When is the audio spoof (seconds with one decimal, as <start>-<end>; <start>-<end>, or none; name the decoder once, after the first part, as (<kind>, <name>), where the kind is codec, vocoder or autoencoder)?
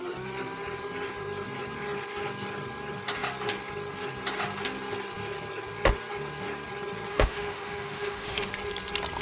7.1-8.5 (autoencoder, DAC-VAE)